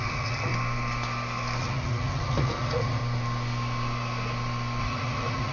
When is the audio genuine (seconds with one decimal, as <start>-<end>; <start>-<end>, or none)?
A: 0.5-1.6; 3.0-4.8